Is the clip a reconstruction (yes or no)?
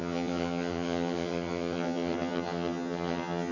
yes